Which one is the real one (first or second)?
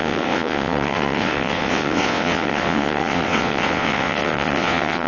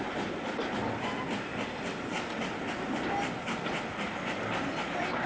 second